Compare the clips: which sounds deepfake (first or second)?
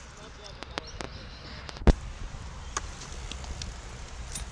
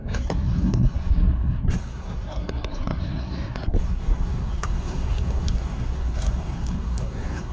second